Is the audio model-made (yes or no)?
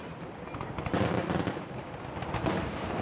no